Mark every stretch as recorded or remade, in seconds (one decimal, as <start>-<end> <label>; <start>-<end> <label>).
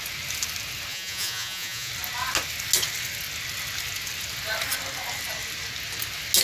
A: 0.0-0.9 recorded; 0.9-1.9 remade; 1.9-6.4 recorded